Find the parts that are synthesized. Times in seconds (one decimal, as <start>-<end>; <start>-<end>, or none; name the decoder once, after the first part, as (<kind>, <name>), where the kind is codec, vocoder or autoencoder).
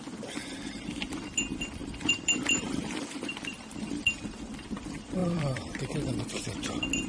1.8-4.7 (vocoder, BigVGAN v2); 5.2-5.8